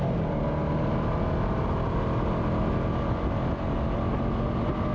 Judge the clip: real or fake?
real